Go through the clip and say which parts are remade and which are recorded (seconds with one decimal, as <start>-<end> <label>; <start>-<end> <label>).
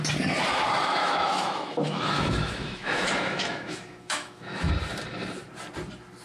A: 0.0-1.0 recorded; 1.0-4.7 remade; 4.7-6.2 recorded